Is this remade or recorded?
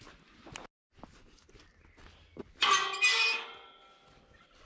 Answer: recorded